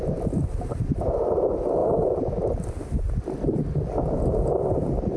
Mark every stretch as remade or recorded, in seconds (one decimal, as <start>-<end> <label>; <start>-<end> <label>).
0.0-5.2 recorded